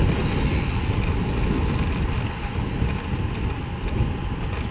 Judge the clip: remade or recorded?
recorded